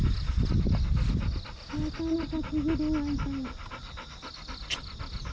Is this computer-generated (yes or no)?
no